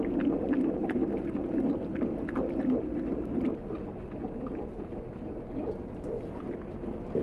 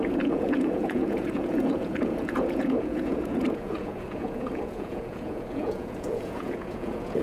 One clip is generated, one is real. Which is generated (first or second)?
second